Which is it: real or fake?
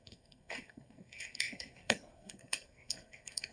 fake